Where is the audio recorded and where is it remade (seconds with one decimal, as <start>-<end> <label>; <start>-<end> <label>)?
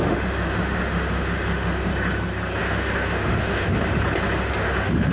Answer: 0.0-1.9 remade; 1.9-2.6 recorded; 2.6-3.9 remade; 3.9-4.4 recorded; 4.4-5.1 remade